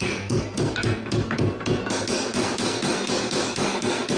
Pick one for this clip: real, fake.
fake